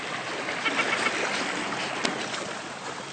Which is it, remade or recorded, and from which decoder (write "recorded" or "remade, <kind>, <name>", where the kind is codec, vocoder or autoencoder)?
recorded